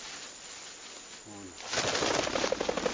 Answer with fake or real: real